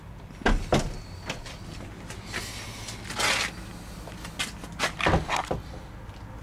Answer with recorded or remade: recorded